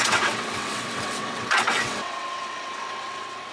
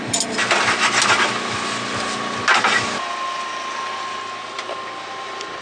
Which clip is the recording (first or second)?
second